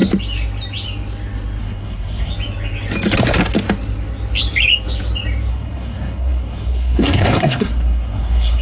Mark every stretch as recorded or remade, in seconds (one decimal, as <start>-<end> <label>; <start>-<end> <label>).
0.0-1.6 recorded; 1.6-2.3 remade; 2.3-5.5 recorded; 5.5-8.6 remade